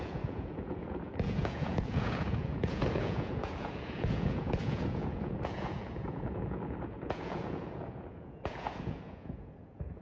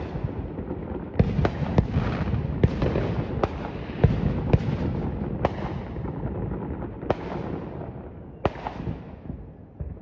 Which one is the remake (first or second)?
first